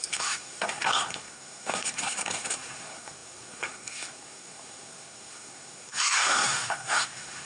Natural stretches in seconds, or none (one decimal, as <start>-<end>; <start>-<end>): none